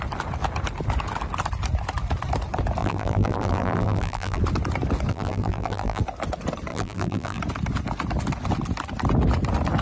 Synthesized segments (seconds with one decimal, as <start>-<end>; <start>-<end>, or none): 2.8-4.4; 5.1-6.0; 6.7-7.4